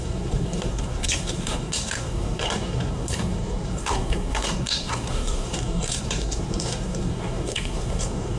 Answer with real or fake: fake